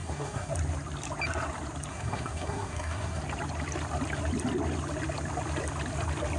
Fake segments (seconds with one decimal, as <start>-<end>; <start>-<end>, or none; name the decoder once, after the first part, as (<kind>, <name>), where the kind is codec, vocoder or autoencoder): 0.0-0.5 (codec, SNAC); 1.9-3.2